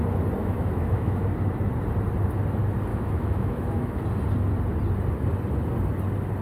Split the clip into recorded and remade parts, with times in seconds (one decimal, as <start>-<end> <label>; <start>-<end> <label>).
0.0-0.4 recorded; 0.4-1.2 remade; 1.2-2.9 recorded; 2.9-4.0 remade; 4.0-6.4 recorded